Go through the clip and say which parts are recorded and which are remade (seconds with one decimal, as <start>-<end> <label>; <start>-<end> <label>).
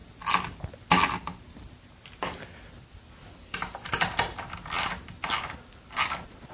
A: 0.0-6.5 recorded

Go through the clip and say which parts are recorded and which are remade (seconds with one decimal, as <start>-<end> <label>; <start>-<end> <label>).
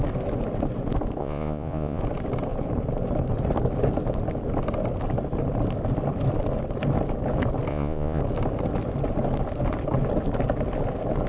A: 0.0-1.2 recorded; 1.2-2.0 remade; 2.0-7.7 recorded; 7.7-8.2 remade; 8.2-11.3 recorded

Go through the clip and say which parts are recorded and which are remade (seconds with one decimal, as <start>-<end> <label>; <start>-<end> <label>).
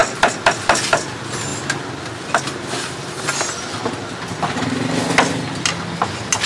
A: 0.0-6.5 recorded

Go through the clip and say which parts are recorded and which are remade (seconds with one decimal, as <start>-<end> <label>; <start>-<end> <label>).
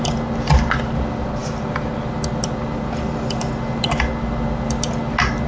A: 0.0-5.5 recorded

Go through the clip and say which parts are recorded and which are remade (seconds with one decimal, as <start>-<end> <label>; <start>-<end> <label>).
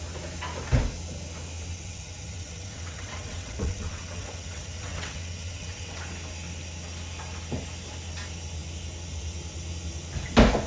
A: 0.0-1.7 recorded; 1.7-6.0 remade; 6.0-10.7 recorded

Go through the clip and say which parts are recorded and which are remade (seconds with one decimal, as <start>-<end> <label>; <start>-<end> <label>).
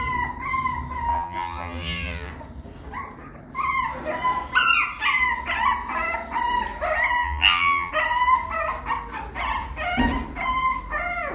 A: 0.0-1.1 recorded; 1.1-2.3 remade; 2.3-7.2 recorded; 7.2-7.9 remade; 7.9-11.3 recorded